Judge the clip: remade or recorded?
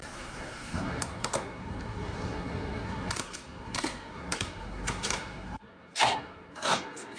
remade